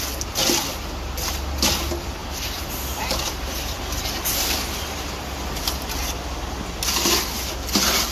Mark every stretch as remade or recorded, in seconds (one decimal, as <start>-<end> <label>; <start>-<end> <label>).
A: 0.0-2.2 recorded; 2.2-5.1 remade; 5.1-8.1 recorded